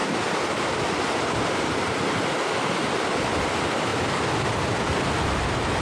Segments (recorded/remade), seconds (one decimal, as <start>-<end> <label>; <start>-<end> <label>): 0.0-5.8 recorded